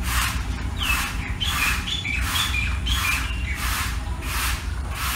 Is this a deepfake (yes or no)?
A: yes